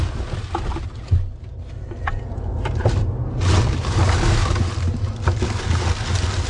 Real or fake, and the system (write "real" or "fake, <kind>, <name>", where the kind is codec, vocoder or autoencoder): real